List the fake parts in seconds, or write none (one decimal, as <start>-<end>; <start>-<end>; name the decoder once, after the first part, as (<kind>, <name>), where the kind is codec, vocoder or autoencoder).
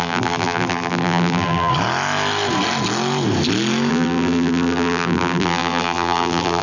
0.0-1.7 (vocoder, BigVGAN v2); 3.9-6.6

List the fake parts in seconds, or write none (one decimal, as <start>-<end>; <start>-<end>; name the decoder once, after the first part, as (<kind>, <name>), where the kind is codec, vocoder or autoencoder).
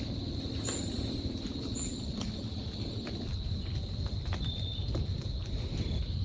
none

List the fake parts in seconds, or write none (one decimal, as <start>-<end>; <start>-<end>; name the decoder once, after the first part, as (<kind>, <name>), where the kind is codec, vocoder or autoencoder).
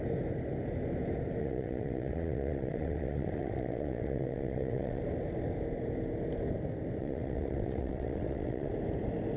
1.4-5.0 (vocoder, WaveNeXt); 7.0-8.7